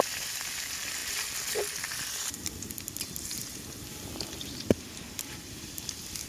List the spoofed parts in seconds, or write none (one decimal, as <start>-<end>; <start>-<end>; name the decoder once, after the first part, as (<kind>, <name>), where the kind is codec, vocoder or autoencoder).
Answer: 0.0-6.3 (vocoder, BigVGAN v2)